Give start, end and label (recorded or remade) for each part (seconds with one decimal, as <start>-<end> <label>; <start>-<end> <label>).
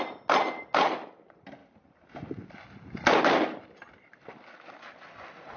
0.0-5.6 recorded